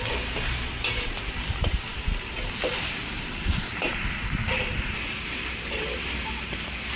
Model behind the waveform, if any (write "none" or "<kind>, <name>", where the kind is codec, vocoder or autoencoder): vocoder, BigVGAN v2